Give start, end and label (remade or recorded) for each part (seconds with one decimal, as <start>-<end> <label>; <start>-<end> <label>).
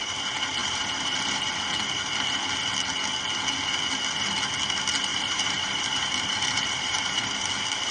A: 0.0-0.6 recorded; 0.6-1.7 remade; 1.7-5.1 recorded; 5.1-7.3 remade; 7.3-7.9 recorded